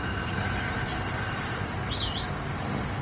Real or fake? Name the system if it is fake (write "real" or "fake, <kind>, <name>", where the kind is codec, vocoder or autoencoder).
real